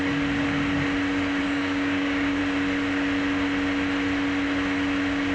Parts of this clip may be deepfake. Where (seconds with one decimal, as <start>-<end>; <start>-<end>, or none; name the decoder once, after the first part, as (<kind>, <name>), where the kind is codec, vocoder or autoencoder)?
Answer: 1.4-2.4 (codec, DAC)